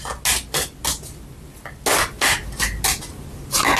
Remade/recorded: recorded